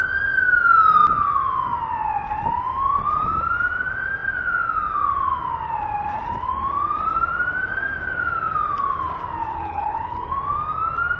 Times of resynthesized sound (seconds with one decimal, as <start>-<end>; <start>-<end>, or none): 9.5-10.3